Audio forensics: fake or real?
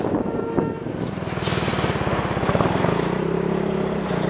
real